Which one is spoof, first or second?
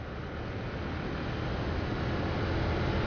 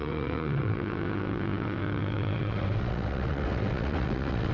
second